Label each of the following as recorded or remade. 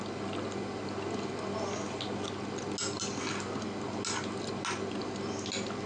recorded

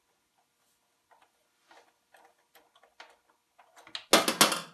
recorded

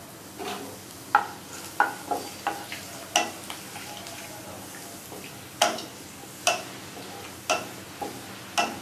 recorded